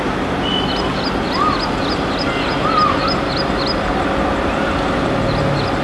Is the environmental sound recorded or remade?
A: recorded